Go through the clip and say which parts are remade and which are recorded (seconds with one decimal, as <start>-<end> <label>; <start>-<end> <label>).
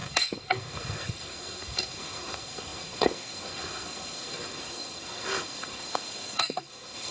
0.0-7.1 remade